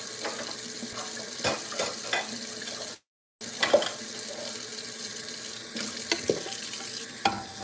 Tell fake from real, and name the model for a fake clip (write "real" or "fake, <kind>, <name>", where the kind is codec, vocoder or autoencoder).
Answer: real